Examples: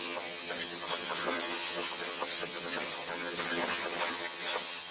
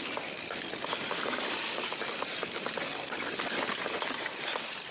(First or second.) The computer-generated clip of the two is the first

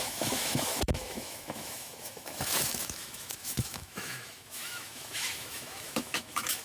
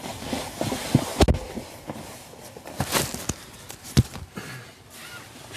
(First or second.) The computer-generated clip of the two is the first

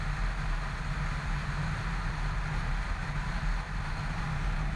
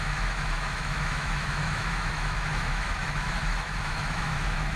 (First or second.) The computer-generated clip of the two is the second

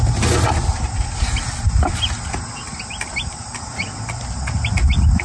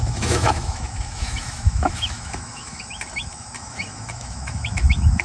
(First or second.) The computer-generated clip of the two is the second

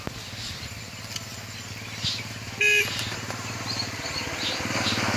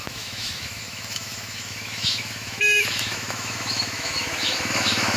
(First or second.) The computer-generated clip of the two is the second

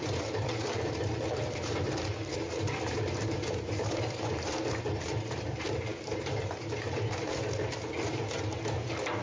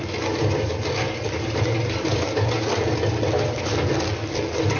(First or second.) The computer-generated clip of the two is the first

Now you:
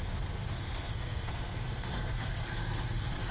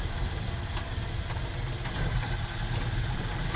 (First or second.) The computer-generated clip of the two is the first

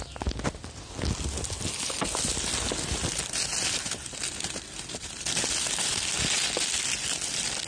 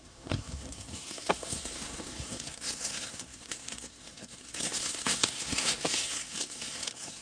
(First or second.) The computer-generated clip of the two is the second